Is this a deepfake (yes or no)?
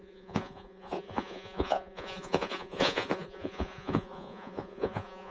yes